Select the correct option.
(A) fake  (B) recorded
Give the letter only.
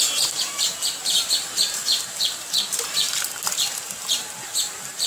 A